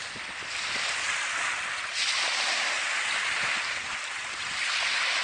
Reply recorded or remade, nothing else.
recorded